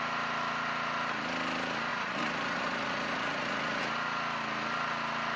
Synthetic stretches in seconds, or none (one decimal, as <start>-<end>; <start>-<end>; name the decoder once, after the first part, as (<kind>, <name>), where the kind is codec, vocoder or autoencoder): 1.9-3.8 (vocoder, Vocos)